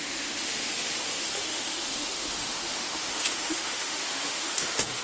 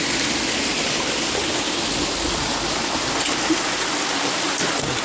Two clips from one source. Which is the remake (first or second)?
first